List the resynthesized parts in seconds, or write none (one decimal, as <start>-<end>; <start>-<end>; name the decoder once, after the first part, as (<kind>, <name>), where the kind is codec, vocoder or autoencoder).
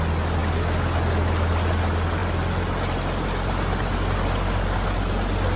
none